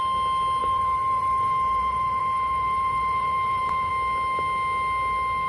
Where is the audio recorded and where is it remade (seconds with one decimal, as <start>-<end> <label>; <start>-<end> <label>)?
0.0-0.6 recorded; 0.6-3.9 remade; 3.9-5.5 recorded